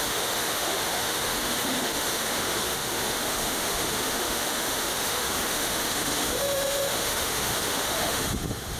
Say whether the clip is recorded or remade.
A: remade